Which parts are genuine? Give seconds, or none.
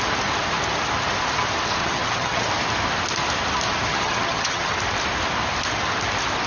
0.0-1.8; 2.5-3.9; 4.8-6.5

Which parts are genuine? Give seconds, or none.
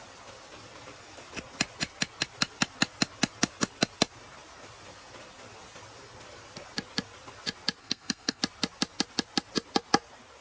0.0-7.8; 8.4-10.4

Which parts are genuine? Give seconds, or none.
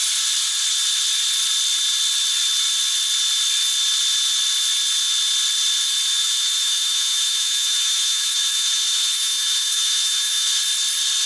0.0-6.2; 10.6-11.3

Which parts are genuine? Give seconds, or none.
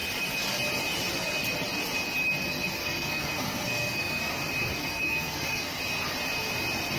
0.0-2.8; 4.3-4.8; 5.8-7.0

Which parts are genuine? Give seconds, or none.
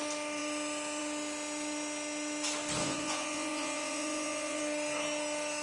0.0-2.8; 4.6-5.6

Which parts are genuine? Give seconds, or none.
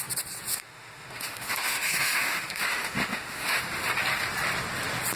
0.0-0.5; 3.6-5.2